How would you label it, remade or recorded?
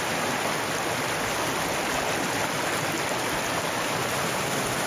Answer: recorded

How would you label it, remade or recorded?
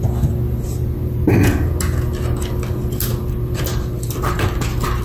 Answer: recorded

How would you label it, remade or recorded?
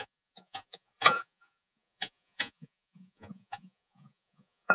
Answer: remade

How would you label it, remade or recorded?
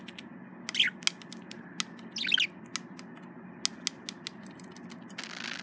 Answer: recorded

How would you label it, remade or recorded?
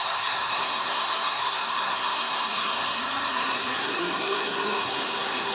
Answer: remade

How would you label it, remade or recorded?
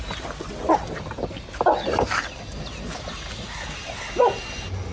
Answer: recorded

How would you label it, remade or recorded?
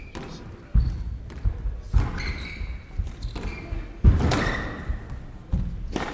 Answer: recorded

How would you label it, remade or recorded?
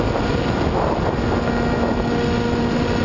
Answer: recorded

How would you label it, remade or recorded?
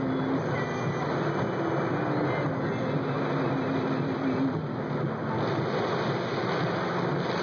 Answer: recorded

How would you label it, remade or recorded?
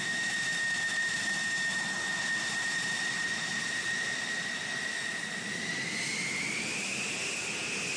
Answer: recorded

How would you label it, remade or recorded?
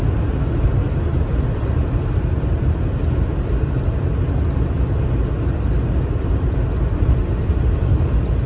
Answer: recorded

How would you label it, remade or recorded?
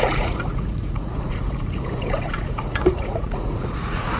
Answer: remade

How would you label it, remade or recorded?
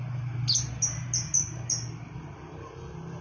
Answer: recorded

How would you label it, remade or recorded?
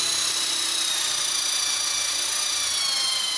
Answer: recorded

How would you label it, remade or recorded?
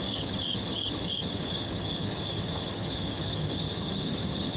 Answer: remade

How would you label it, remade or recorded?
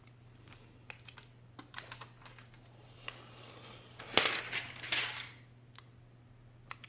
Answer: recorded